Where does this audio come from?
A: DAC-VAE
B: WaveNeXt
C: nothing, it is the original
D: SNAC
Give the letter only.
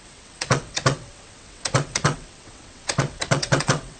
B